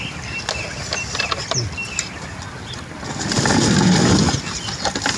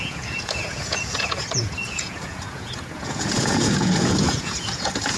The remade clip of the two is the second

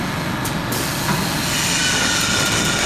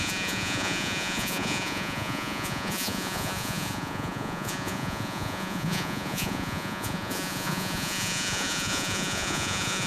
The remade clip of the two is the second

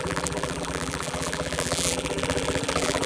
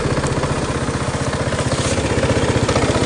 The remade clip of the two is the first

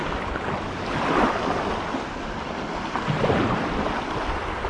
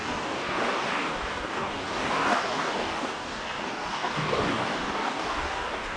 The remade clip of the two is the second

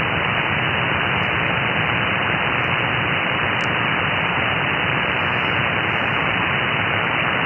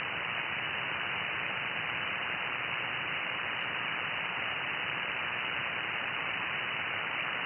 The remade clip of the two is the second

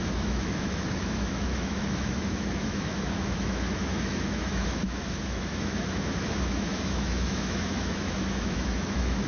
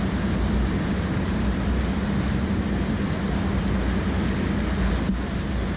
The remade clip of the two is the first